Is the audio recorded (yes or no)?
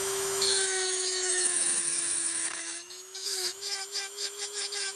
no